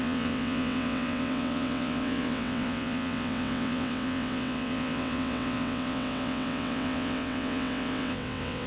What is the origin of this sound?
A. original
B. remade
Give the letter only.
B